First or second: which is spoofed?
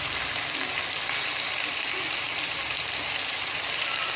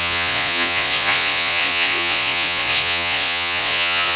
second